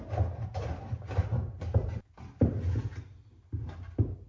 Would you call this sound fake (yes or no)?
no